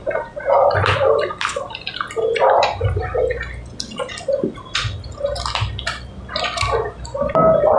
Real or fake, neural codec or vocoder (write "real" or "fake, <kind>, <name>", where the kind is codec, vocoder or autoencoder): real